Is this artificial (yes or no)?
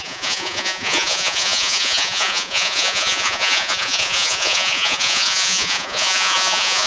yes